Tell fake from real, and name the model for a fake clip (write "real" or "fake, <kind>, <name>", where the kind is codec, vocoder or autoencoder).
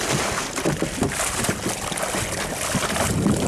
real